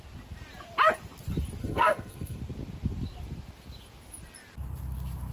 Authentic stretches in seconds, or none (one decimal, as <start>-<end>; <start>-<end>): 0.0-1.6; 2.4-5.3